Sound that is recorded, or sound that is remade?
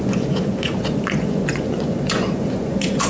remade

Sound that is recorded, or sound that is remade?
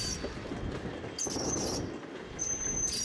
recorded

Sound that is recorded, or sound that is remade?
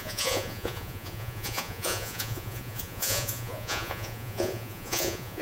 remade